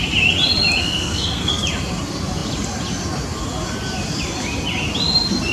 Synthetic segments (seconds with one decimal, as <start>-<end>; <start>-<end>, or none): 0.8-1.5